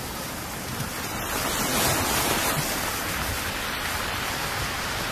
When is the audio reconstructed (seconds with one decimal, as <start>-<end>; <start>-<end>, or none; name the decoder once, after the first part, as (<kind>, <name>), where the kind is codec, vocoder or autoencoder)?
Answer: none